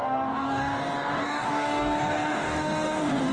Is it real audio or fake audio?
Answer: fake